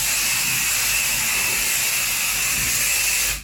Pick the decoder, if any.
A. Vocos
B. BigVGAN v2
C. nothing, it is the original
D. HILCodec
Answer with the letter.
C